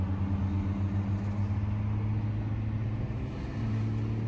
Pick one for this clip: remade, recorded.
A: recorded